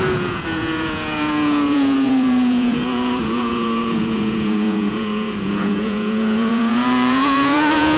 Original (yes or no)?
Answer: no